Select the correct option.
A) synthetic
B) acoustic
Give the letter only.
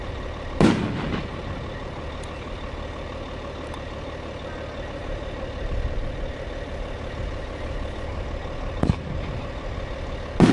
B